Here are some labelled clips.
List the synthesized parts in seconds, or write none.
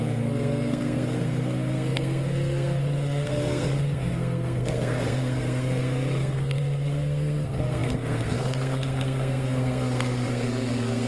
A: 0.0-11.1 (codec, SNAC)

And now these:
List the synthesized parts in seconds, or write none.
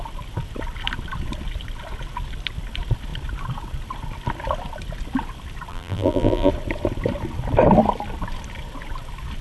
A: 5.7-6.5 (vocoder, BigVGAN v2)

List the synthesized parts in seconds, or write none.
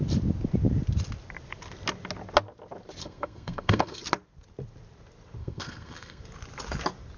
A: 3.0-4.0 (codec, SNAC); 5.4-6.2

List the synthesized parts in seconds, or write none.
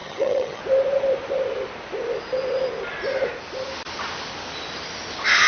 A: 0.0-0.6 (vocoder, HiFi-GAN)